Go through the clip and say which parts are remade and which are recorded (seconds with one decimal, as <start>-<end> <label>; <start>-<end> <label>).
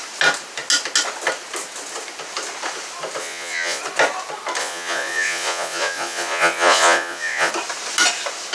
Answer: 0.0-3.2 recorded; 3.2-3.8 remade; 3.8-4.6 recorded; 4.6-7.5 remade; 7.5-8.5 recorded